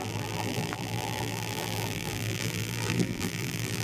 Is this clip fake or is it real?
fake